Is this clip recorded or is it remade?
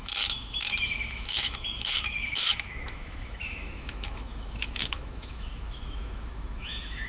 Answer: remade